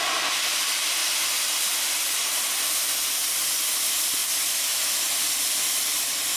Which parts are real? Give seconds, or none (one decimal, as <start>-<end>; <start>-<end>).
0.0-6.4

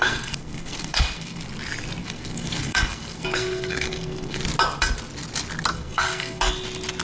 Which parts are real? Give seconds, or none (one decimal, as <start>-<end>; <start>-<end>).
1.4-2.0; 4.4-5.7; 6.5-7.0

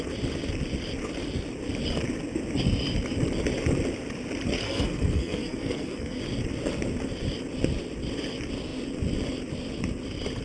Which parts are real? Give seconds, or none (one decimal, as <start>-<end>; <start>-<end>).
0.0-4.6; 6.2-10.4

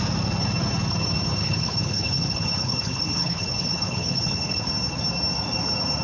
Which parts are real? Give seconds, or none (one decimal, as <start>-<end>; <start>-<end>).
0.0-1.4; 4.7-6.0

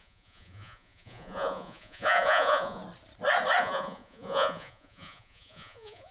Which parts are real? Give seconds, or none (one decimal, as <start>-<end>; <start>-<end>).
2.8-3.6

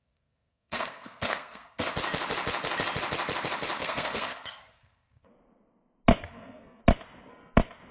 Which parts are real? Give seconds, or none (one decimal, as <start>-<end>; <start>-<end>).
1.9-3.8; 5.3-6.2; 6.8-7.9

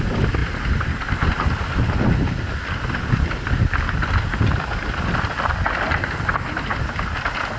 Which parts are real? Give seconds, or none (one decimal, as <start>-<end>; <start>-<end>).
0.0-7.6